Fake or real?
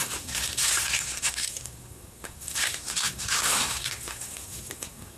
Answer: fake